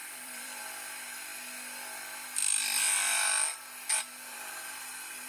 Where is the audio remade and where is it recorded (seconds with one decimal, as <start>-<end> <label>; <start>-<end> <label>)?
0.0-0.6 remade; 0.6-2.4 recorded; 2.4-3.3 remade; 3.3-4.3 recorded; 4.3-5.3 remade